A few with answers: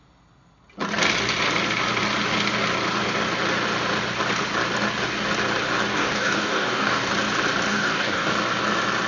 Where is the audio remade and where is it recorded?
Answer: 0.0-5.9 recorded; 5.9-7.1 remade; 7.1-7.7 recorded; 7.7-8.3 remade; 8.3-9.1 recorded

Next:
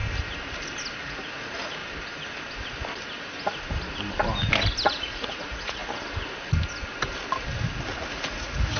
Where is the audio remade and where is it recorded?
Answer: 0.0-1.0 recorded; 1.0-1.8 remade; 1.8-4.9 recorded; 4.9-5.8 remade; 5.8-8.1 recorded; 8.1-8.8 remade

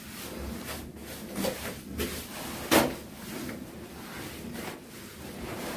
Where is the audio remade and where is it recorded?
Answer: 0.0-5.8 recorded

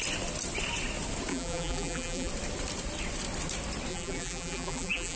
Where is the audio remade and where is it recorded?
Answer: 0.0-1.3 recorded; 1.3-2.3 remade; 2.3-3.9 recorded; 3.9-5.2 remade

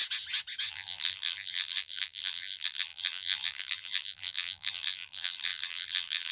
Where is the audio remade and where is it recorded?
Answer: 0.0-0.7 recorded; 0.7-6.3 remade

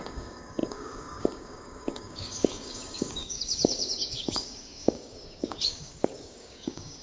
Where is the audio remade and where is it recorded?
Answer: 0.0-7.0 remade

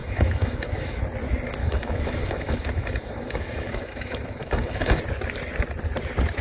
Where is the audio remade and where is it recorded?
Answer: 0.0-1.0 remade; 1.0-1.6 recorded; 1.6-5.0 remade; 5.0-6.4 recorded